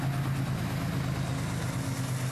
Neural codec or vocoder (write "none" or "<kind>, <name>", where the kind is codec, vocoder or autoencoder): none